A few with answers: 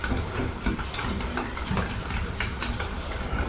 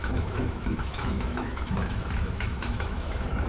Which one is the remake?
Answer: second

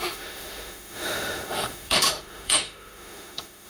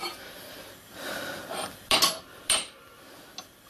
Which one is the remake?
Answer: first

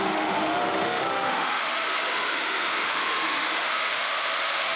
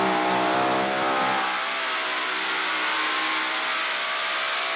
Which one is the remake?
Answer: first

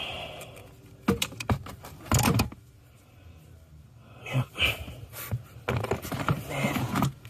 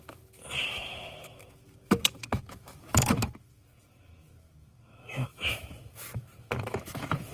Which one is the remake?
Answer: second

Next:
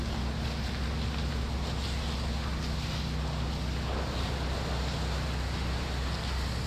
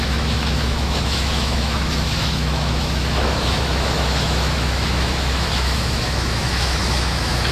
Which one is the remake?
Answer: second